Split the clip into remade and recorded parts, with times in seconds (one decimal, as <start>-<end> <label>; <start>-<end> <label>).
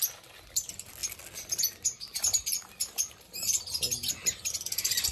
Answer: 0.0-5.1 recorded